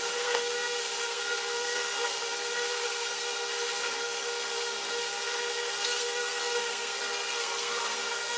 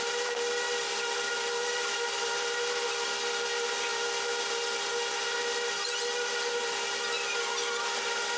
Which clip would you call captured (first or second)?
second